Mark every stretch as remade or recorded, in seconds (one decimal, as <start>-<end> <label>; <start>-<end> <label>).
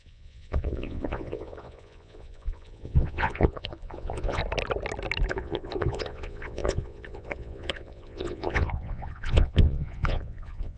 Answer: 0.0-4.4 remade; 4.4-5.3 recorded; 5.3-10.8 remade